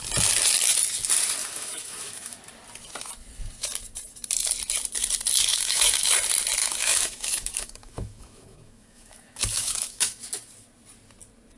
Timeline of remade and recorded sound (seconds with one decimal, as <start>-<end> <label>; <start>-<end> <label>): 0.0-1.4 recorded; 1.4-2.4 remade; 2.4-5.5 recorded; 5.5-6.1 remade; 6.1-6.6 recorded; 6.6-10.2 remade; 10.2-11.6 recorded